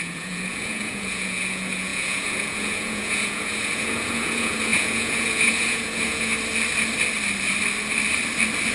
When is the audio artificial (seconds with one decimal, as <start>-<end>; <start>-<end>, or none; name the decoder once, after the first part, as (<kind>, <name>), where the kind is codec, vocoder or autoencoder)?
0.0-6.3 (vocoder, Vocos)